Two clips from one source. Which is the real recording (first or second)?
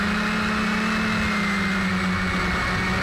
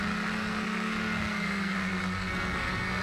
first